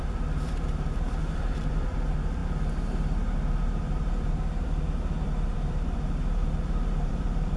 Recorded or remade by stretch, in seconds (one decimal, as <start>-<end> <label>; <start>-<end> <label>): 0.0-2.4 remade; 2.4-3.6 recorded; 3.6-7.6 remade